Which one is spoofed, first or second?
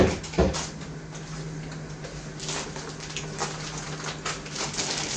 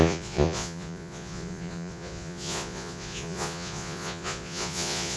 second